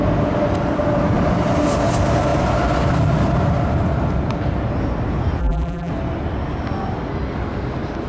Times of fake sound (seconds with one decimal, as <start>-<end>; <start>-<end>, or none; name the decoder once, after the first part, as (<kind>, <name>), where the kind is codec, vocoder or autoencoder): 5.4-5.9 (vocoder, BigVGAN v2)